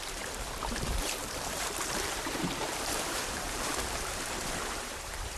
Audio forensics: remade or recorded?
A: remade